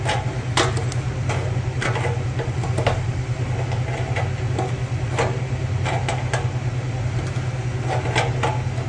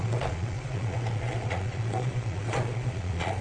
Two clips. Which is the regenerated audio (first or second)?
second